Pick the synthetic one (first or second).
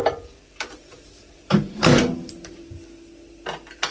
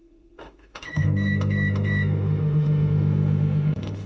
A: second